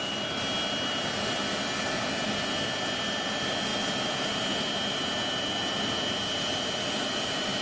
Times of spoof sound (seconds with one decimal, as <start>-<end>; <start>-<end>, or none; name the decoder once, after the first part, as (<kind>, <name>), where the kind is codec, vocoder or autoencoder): none